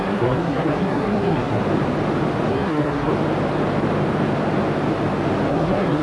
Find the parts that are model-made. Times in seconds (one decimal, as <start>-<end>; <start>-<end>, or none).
0.0-1.6; 2.5-3.1; 5.5-6.0